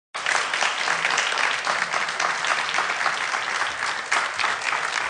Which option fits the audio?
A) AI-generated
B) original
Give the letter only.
B